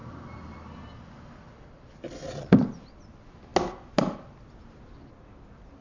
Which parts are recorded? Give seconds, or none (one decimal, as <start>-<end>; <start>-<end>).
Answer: 3.0-5.8